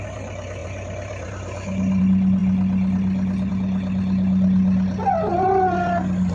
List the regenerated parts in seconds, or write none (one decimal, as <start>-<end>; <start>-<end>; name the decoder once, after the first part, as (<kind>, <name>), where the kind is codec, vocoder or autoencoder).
none